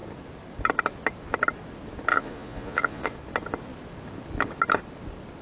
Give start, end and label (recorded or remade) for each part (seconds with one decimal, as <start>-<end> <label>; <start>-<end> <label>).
0.0-2.1 recorded; 2.1-3.1 remade; 3.1-5.4 recorded

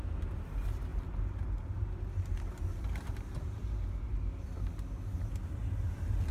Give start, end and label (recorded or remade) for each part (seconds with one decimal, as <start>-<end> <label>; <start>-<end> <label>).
0.0-6.3 recorded

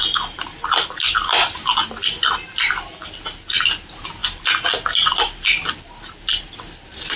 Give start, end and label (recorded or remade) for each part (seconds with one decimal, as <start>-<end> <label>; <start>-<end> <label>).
0.0-7.2 recorded

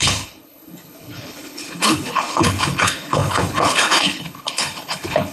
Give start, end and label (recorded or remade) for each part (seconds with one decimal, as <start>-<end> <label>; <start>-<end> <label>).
0.0-5.3 remade

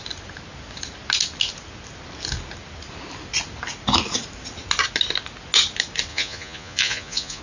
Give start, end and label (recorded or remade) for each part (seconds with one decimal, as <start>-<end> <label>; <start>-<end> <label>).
0.0-6.1 recorded; 6.1-7.4 remade